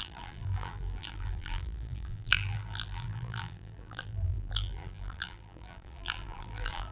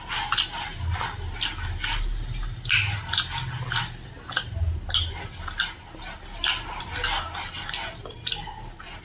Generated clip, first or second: first